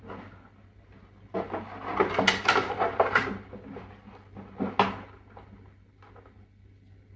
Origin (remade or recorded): recorded